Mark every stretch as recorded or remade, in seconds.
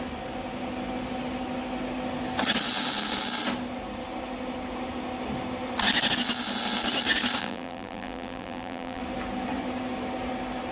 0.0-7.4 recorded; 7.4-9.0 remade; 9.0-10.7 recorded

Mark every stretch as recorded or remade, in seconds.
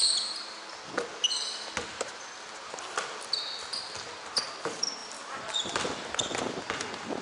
0.0-1.9 recorded; 1.9-3.3 remade; 3.3-5.0 recorded; 5.0-6.4 remade; 6.4-7.2 recorded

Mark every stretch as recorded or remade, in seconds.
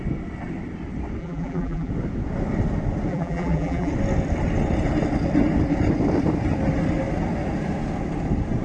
0.0-1.2 recorded; 1.2-1.9 remade; 1.9-3.1 recorded; 3.1-3.9 remade; 3.9-8.6 recorded